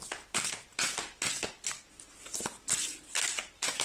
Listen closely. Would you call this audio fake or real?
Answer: real